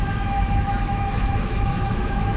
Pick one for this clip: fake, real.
fake